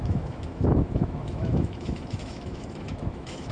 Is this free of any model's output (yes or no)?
no